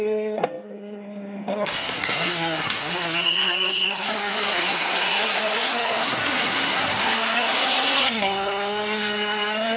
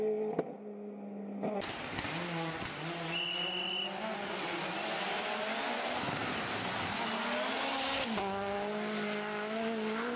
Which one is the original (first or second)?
second